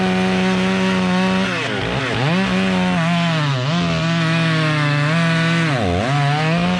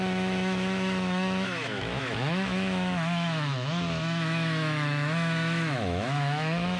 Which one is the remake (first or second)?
second